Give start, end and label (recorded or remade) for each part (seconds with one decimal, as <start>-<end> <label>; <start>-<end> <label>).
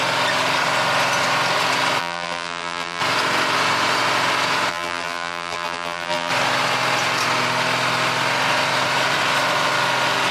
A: 0.0-2.0 recorded; 2.0-3.0 remade; 3.0-4.7 recorded; 4.7-6.3 remade; 6.3-10.3 recorded